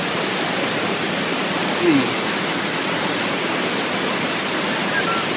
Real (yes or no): yes